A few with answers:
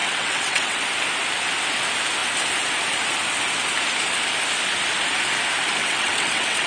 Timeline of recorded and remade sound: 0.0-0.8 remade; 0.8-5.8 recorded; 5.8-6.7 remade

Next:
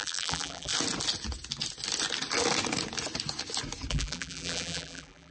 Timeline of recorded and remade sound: 0.0-0.7 remade; 0.7-3.9 recorded; 3.9-5.3 remade

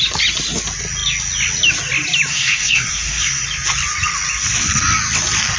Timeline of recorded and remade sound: 0.0-2.3 recorded; 2.3-3.4 remade; 3.4-5.6 recorded

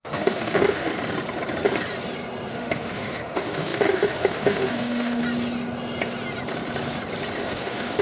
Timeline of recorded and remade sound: 0.0-0.9 remade; 0.9-2.5 recorded; 2.5-5.2 remade; 5.2-7.4 recorded; 7.4-8.0 remade

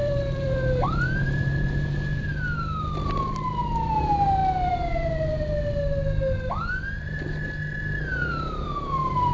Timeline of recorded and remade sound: 0.0-1.5 remade; 1.5-8.1 recorded; 8.1-8.7 remade; 8.7-9.3 recorded